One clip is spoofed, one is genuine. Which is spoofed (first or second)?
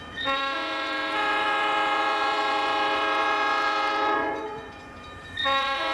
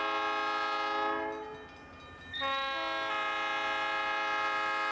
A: first